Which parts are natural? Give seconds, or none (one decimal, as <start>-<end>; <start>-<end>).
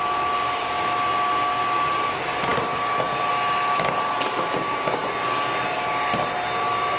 0.0-7.0